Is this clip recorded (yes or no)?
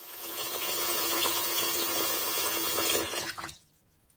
no